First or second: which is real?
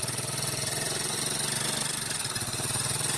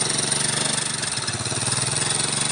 second